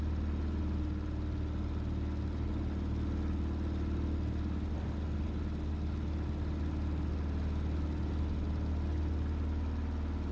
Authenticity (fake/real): real